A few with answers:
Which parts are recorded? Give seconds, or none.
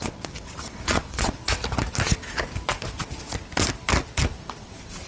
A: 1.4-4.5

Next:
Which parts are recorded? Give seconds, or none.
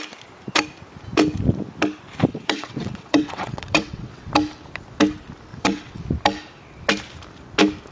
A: 0.0-2.3; 4.3-5.5; 6.0-7.9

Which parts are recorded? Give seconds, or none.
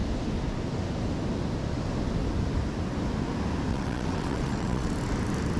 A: 0.0-3.7; 4.9-5.6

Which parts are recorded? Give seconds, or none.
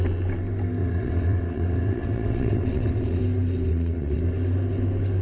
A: 0.0-0.8; 3.2-3.7; 4.2-5.2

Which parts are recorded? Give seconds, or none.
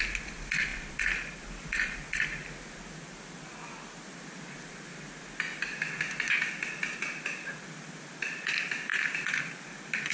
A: 0.0-10.1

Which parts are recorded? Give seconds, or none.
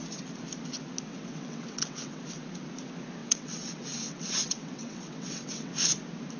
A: 0.0-1.1; 2.2-3.2; 5.7-6.4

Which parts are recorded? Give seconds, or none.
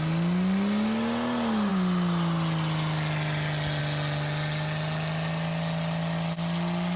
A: 0.0-7.0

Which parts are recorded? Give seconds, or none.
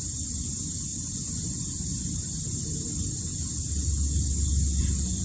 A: 0.0-5.2